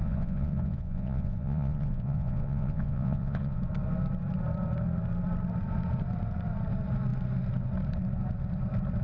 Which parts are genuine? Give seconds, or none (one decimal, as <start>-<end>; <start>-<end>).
3.6-9.0